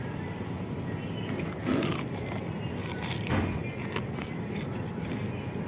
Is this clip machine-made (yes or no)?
no